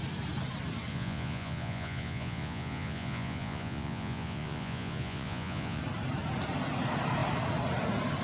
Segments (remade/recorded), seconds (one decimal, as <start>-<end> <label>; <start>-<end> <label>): 0.0-0.9 recorded; 0.9-5.8 remade; 5.8-8.2 recorded